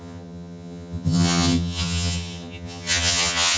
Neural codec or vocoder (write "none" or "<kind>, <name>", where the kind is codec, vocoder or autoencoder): vocoder, HiFi-GAN